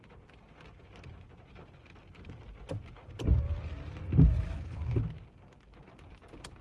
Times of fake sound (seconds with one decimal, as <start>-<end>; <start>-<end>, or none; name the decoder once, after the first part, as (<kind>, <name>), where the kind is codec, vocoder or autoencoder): none